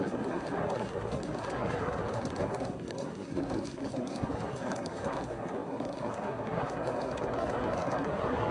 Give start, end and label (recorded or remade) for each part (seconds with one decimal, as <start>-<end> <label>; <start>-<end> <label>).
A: 0.0-8.5 remade